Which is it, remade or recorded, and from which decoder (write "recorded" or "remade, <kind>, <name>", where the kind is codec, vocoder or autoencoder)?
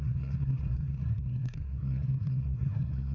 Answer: remade, codec, SNAC